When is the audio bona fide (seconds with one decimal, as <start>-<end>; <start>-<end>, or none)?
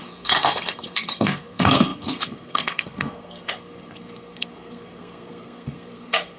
none